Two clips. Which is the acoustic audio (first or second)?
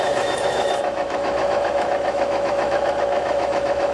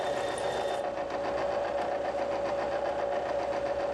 second